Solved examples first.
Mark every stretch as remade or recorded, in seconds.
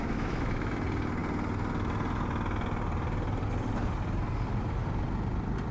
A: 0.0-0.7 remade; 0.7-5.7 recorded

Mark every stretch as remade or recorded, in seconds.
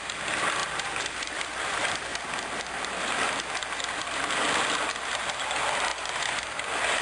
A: 0.0-2.1 remade; 2.1-5.2 recorded; 5.2-7.0 remade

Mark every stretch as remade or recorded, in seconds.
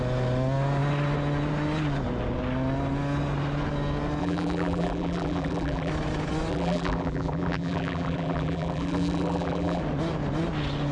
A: 0.0-4.2 recorded; 4.2-5.9 remade; 5.9-6.5 recorded; 6.5-9.8 remade; 9.8-10.9 recorded